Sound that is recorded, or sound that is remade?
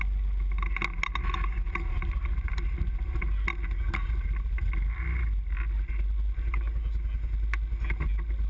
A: recorded